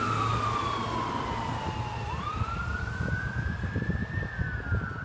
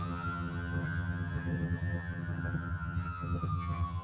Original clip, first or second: first